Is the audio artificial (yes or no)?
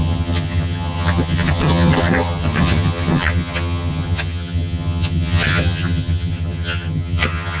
yes